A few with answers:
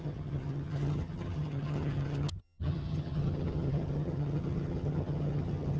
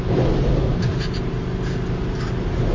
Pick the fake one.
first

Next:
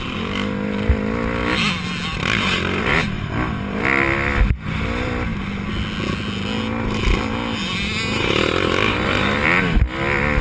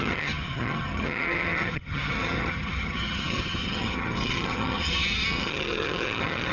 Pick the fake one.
second